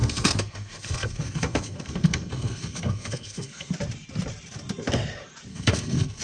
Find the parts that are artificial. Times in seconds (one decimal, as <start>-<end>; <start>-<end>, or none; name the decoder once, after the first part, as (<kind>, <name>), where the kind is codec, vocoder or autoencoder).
0.0-3.7 (codec, SNAC); 5.5-6.2